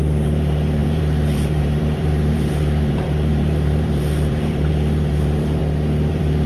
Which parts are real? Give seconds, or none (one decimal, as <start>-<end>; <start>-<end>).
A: 5.6-6.1